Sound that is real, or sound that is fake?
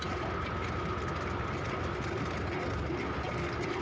real